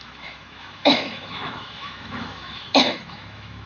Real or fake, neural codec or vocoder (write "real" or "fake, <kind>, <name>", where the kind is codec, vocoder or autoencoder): fake, autoencoder, DAC-VAE